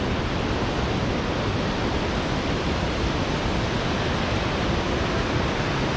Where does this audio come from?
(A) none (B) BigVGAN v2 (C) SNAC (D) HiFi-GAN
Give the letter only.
A